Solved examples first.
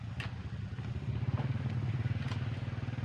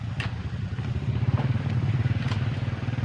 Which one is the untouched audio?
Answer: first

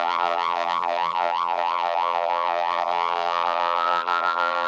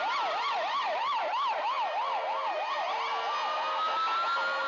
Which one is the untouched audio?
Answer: second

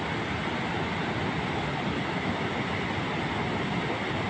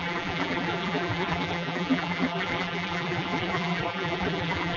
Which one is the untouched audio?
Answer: first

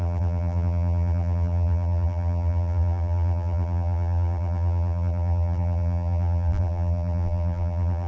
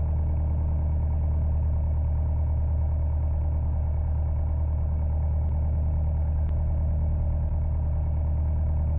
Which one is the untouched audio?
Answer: second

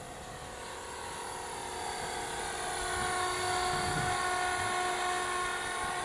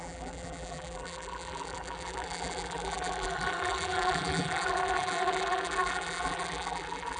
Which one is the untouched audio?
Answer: first